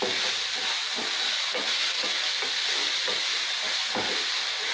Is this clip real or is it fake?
real